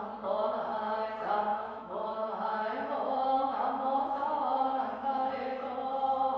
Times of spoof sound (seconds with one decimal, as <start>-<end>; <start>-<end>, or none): 1.5-5.3